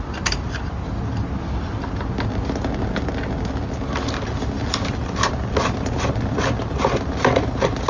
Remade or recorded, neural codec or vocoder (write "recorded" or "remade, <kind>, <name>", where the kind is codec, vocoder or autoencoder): recorded